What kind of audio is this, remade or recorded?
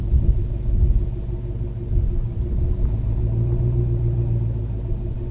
recorded